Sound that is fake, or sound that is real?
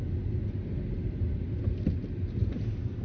real